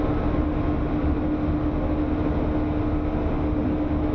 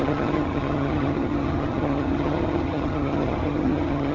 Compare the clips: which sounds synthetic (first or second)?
second